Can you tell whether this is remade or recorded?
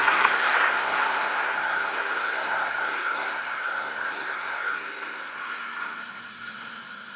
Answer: remade